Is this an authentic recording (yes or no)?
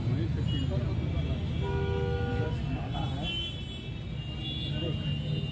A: yes